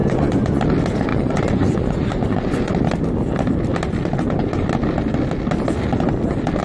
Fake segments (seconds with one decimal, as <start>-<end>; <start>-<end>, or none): 0.0-0.6; 1.1-2.7